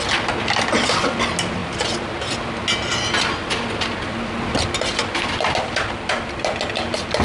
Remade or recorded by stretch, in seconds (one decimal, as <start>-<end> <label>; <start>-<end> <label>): 0.0-7.2 recorded